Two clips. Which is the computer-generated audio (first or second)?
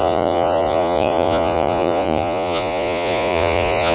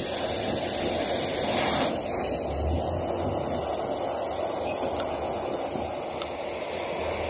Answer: first